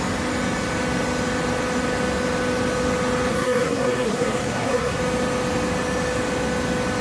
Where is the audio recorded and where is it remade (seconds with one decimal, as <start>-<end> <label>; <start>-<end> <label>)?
0.0-3.3 recorded; 3.3-5.0 remade; 5.0-7.0 recorded